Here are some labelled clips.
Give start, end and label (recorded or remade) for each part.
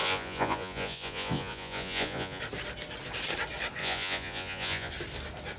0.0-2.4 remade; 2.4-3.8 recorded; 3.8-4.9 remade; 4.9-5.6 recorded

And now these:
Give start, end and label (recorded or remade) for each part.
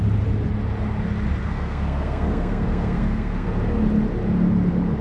0.0-1.4 recorded; 1.4-3.5 remade; 3.5-5.0 recorded